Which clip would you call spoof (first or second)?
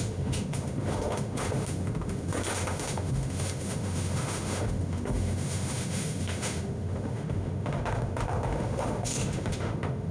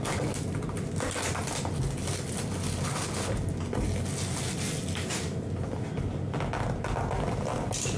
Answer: first